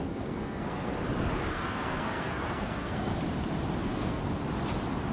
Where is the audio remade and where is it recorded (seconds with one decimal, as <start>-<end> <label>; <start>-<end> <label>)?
0.0-0.9 remade; 0.9-1.5 recorded; 1.5-3.1 remade; 3.1-3.8 recorded; 3.8-4.2 remade; 4.2-5.1 recorded